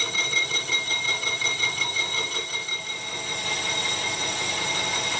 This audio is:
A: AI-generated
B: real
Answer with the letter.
B